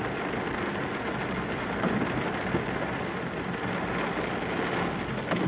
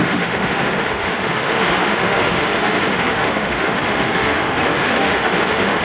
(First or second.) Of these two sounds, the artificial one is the second